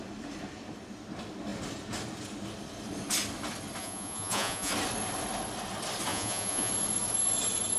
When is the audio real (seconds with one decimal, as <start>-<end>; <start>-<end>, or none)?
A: 0.0-3.8; 4.7-6.1; 6.7-7.8